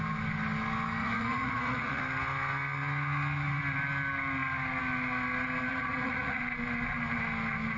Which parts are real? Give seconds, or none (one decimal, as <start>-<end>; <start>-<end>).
0.0-1.0; 2.0-5.7; 6.4-7.8